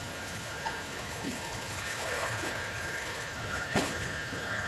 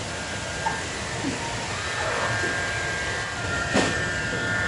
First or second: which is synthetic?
first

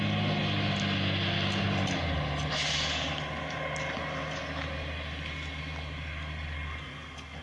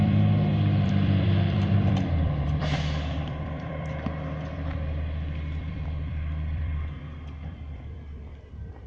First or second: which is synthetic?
second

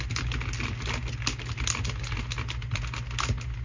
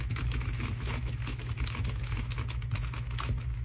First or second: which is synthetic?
second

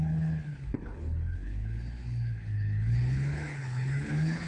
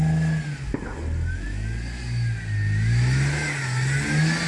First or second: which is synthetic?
first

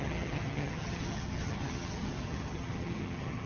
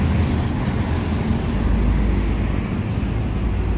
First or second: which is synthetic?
first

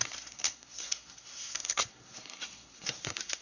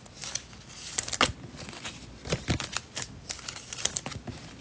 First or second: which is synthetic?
first